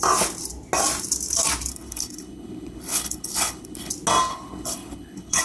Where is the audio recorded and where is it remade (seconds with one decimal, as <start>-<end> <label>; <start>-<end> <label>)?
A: 0.0-1.7 recorded; 1.7-3.9 remade; 3.9-4.3 recorded; 4.3-5.4 remade